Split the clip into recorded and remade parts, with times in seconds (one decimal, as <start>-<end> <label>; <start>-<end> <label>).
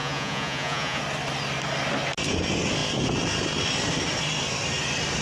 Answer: 0.0-1.0 remade; 1.0-5.2 recorded